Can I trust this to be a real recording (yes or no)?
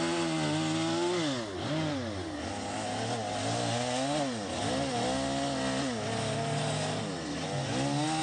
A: yes